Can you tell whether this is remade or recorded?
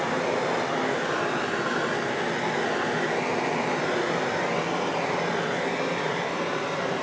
recorded